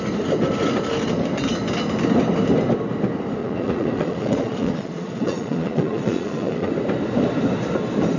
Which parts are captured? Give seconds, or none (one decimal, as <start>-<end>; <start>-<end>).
0.0-3.4; 6.7-8.2